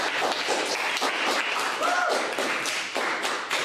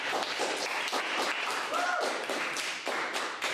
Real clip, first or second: first